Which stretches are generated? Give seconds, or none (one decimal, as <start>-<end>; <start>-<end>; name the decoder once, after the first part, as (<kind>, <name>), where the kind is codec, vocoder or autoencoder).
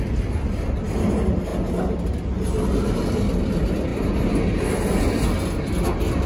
none